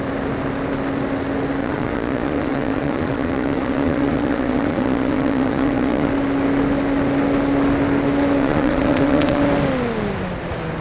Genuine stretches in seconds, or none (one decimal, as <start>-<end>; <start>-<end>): 0.0-1.6; 6.1-8.4; 9.4-10.8